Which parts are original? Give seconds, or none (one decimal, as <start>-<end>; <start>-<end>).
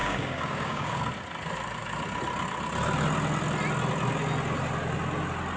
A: 1.0-5.6